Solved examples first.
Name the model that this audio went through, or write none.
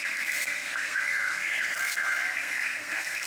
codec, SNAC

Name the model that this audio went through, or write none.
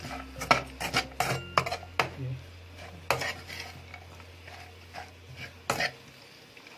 none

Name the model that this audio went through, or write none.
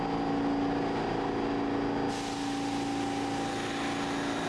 none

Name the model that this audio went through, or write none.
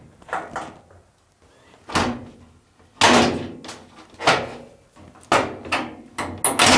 none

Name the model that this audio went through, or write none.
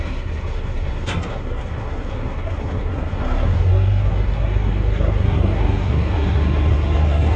codec, SNAC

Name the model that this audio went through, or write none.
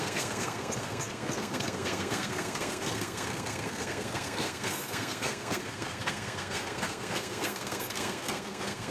codec, SNAC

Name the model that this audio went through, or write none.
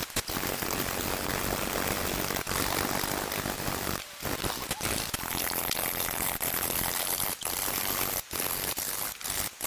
none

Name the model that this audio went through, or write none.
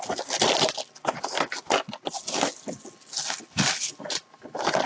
none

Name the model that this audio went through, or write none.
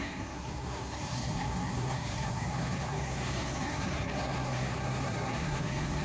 codec, SNAC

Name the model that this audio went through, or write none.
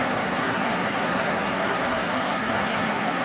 codec, SNAC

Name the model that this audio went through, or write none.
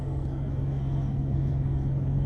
codec, SNAC